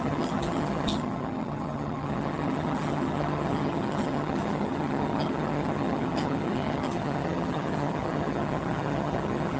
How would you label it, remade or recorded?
remade